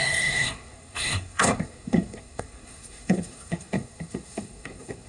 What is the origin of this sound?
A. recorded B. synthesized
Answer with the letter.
B